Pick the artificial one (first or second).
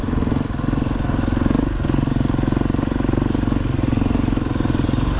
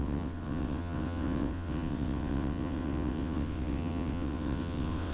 second